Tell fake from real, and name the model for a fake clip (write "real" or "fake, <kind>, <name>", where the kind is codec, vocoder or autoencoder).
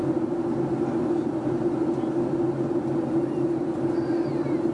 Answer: real